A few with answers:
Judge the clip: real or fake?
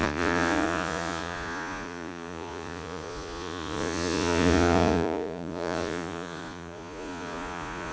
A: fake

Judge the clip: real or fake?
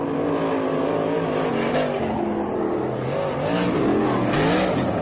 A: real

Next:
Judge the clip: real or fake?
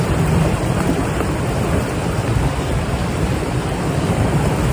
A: real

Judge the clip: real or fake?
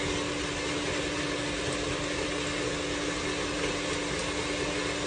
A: real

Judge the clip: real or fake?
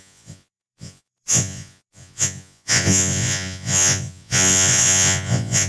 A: fake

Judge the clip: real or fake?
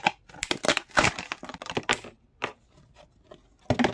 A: real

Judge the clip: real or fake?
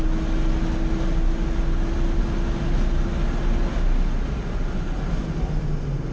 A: real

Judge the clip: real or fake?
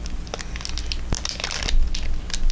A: real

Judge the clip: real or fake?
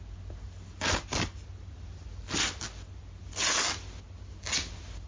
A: real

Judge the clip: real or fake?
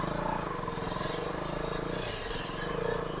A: real